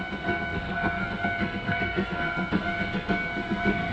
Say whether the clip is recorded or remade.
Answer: remade